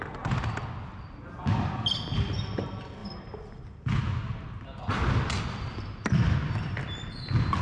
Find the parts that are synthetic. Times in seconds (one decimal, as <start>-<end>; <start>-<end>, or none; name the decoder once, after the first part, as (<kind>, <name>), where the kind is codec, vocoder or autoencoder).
none